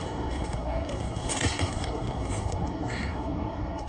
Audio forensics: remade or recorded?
remade